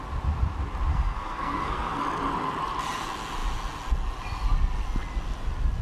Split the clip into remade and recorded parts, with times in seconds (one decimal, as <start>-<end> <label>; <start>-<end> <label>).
0.0-0.9 recorded; 0.9-2.0 remade; 2.0-5.8 recorded